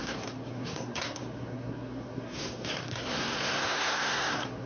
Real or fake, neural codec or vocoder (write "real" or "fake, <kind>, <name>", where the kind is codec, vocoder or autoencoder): fake, codec, SNAC